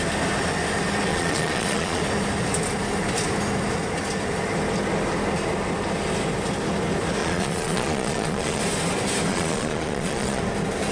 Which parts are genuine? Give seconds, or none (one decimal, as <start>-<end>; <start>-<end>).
0.0-1.1; 2.0-7.2; 8.6-9.3; 10.4-10.9